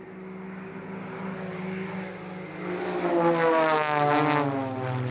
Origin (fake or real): real